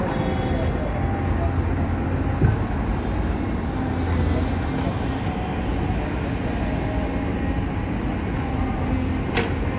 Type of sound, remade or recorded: recorded